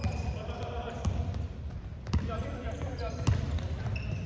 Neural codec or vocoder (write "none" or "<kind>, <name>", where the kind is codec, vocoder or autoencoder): vocoder, BigVGAN v2